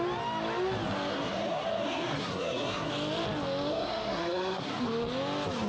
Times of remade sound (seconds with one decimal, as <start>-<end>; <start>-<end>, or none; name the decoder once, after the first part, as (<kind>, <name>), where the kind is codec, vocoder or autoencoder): 1.1-2.9 (codec, SNAC); 3.7-4.8